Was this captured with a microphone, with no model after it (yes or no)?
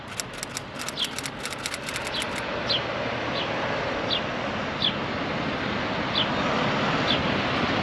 yes